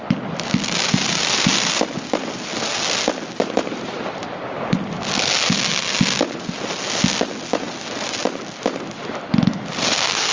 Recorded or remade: recorded